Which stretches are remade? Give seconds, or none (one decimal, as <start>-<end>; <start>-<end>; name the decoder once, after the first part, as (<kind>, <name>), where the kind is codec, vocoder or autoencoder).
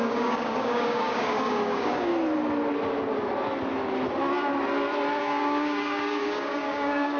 0.0-2.1 (codec, DAC); 5.2-7.2